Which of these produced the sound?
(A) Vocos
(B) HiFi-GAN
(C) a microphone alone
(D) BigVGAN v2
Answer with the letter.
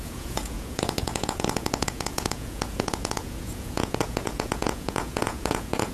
A